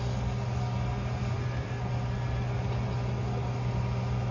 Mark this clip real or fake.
real